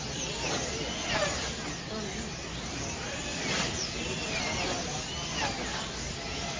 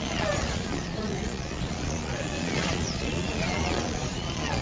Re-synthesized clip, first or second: second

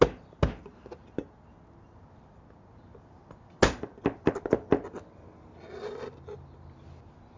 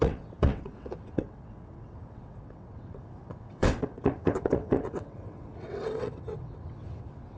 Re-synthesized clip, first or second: second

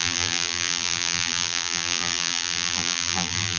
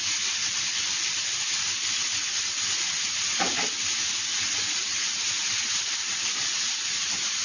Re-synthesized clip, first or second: first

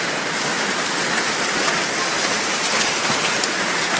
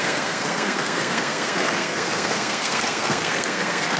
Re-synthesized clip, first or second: second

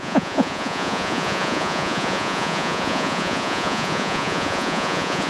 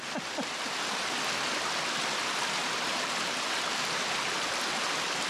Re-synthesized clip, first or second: first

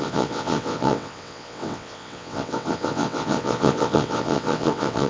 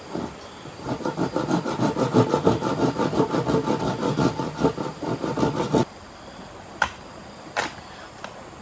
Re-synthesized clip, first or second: first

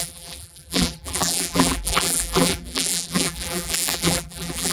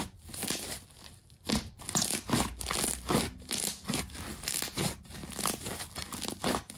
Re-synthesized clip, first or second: first